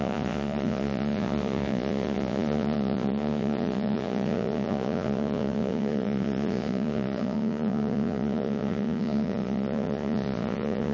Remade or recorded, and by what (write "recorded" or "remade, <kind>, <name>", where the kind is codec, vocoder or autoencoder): remade, vocoder, Vocos